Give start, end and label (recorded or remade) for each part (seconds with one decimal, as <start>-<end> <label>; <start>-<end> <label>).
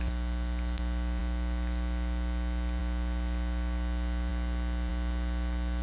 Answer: 0.0-5.8 recorded